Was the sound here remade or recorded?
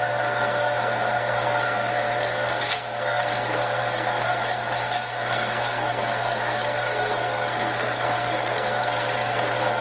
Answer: remade